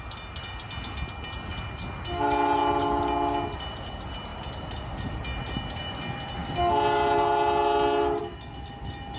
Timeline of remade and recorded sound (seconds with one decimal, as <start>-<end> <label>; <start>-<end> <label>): 0.0-9.2 recorded